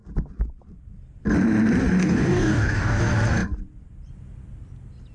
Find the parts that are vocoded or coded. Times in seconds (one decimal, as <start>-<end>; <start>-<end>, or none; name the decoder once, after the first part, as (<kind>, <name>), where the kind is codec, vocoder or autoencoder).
2.0-3.0 (codec, DAC)